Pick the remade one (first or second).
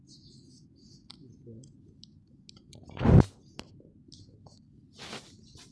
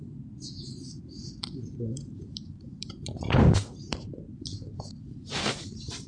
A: second